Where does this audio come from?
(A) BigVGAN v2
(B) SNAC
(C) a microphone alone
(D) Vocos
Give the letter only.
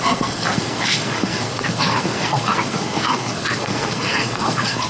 B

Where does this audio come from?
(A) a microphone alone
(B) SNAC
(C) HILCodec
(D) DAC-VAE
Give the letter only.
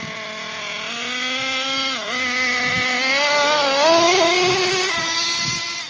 A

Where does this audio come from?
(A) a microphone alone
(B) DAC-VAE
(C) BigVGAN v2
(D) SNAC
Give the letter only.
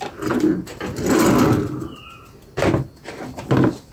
A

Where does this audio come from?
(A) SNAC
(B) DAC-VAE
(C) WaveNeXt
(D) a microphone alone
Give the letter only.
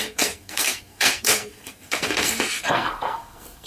A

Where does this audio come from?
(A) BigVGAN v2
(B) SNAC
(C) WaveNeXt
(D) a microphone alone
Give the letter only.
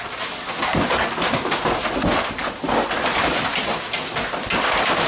D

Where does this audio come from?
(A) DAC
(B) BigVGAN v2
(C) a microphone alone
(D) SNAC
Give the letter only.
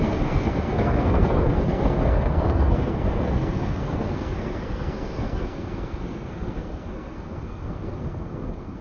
D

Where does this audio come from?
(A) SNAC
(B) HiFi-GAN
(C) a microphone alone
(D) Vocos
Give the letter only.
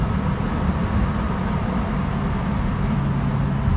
C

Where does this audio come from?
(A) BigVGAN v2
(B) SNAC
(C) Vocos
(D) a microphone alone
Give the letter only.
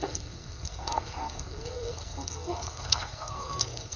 B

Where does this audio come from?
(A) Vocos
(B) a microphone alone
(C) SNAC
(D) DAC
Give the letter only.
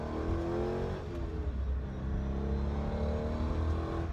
B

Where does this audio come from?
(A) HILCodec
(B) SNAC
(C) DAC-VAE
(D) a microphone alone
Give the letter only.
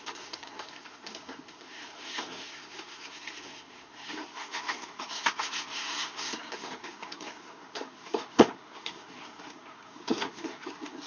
B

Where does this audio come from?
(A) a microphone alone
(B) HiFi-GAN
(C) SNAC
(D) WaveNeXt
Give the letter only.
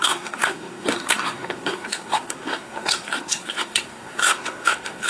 C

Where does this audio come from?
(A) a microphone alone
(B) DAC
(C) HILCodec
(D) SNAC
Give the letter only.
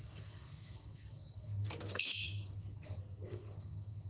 D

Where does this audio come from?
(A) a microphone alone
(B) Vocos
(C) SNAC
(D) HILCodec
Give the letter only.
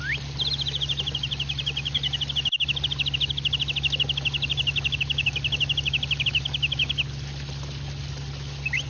A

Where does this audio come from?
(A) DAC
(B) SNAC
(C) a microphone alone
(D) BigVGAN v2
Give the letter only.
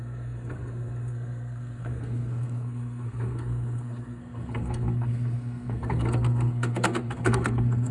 B